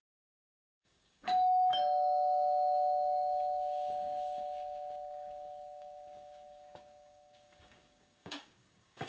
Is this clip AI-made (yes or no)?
yes